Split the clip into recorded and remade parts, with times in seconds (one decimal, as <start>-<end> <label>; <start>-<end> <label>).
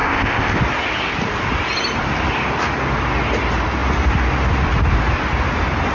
0.0-0.6 remade; 0.6-5.9 recorded